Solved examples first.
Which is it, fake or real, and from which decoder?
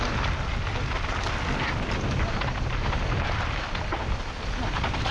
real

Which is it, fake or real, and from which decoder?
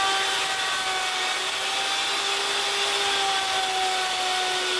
real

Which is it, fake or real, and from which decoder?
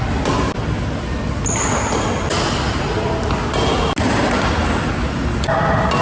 real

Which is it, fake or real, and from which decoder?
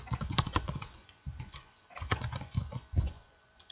fake, vocoder, Vocos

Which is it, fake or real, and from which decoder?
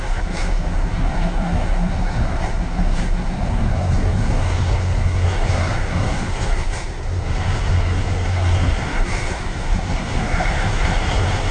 fake, codec, SNAC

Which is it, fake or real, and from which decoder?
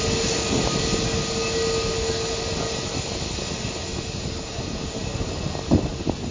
real